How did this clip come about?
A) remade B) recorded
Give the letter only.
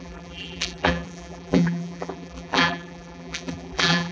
A